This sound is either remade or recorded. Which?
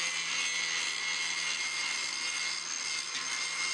recorded